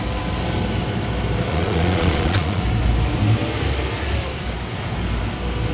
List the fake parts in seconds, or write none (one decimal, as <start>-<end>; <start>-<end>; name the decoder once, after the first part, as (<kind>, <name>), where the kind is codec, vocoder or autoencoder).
1.5-2.6 (vocoder, Vocos)